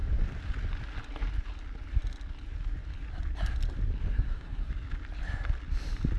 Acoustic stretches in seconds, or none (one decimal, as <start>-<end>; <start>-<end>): 0.0-4.1; 4.7-6.2